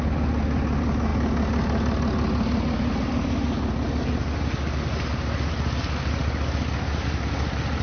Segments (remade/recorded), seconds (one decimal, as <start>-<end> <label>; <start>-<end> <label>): 0.0-7.8 recorded

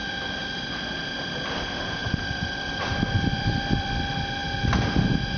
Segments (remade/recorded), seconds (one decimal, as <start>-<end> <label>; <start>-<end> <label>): 0.0-0.6 remade; 0.6-2.0 recorded; 2.0-3.9 remade; 3.9-5.4 recorded

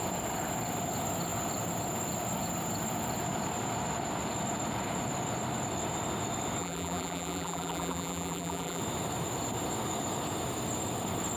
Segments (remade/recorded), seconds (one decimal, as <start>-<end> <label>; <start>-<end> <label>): 0.0-6.6 recorded; 6.6-8.8 remade; 8.8-11.4 recorded

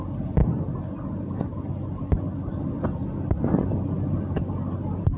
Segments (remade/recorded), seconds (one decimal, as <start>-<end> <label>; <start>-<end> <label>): 0.0-5.2 recorded

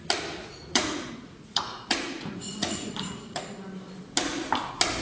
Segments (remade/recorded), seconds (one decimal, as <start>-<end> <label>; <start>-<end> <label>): 0.0-0.4 recorded; 0.4-3.4 remade; 3.4-5.0 recorded

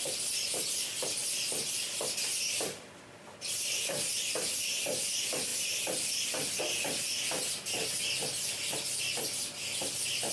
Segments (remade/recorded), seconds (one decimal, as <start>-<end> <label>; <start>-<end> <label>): 0.0-10.3 recorded

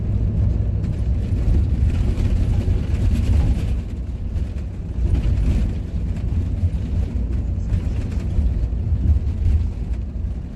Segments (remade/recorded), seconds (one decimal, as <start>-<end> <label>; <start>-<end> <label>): 0.0-1.4 recorded; 1.4-2.2 remade; 2.2-10.6 recorded